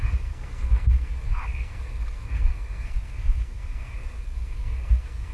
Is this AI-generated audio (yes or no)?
yes